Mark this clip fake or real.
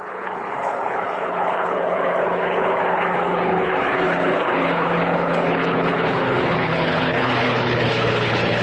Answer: fake